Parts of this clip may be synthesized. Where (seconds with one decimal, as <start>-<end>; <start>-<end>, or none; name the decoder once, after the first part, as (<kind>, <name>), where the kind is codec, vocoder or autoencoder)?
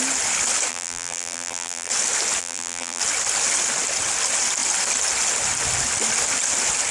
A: 0.7-1.9 (vocoder, BigVGAN v2); 2.4-3.0